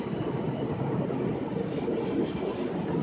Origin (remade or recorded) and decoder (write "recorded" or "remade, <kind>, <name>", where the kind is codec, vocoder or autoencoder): recorded